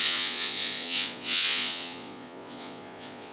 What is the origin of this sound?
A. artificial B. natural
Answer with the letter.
A